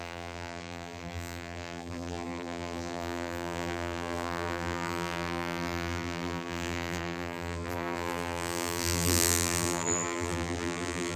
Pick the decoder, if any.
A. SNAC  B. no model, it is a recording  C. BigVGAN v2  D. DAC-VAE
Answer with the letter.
C